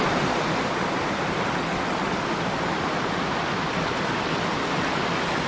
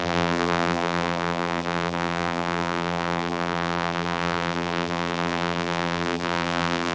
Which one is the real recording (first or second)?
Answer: first